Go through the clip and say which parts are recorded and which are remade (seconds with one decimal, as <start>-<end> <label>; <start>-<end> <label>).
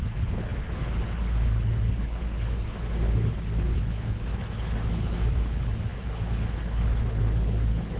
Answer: 0.0-8.0 remade